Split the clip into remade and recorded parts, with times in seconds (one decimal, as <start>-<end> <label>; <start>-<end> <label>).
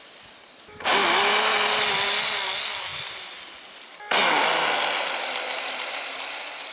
0.0-6.7 recorded